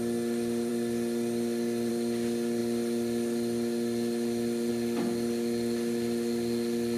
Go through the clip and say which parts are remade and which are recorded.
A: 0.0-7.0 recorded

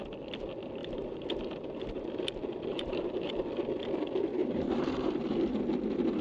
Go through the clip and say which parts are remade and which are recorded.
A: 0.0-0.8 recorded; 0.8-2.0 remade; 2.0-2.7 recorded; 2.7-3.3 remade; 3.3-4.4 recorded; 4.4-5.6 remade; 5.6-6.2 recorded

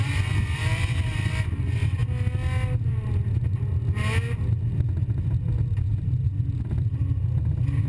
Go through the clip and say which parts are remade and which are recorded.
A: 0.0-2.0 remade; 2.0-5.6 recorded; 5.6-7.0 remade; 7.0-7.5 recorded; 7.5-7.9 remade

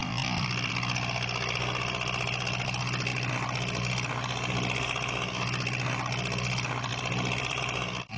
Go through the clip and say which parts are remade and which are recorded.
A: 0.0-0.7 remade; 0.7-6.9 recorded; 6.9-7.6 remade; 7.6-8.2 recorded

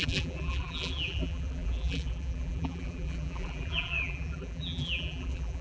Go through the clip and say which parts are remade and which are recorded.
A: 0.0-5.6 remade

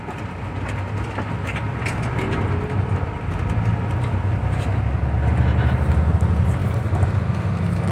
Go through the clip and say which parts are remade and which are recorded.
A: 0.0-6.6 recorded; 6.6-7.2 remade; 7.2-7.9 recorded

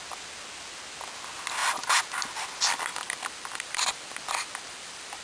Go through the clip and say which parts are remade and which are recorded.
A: 0.0-2.9 recorded; 2.9-5.2 remade

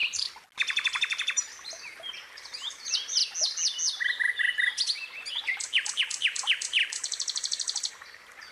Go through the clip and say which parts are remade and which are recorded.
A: 0.0-0.6 recorded; 0.6-3.2 remade; 3.2-5.4 recorded; 5.4-8.5 remade